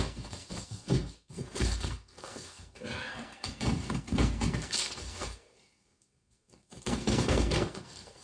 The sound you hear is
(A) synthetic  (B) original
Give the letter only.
A